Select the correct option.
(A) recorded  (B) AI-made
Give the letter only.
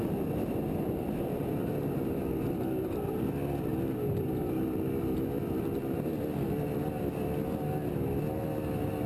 A